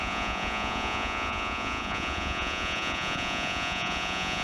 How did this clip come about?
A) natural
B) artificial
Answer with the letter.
B